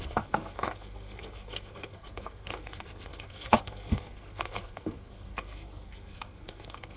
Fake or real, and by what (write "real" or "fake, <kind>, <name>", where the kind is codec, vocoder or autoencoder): fake, codec, SNAC